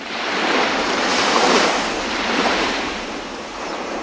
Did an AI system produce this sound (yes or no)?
yes